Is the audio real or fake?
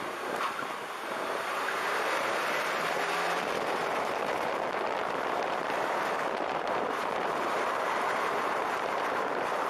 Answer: fake